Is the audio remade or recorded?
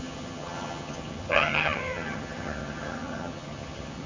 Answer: remade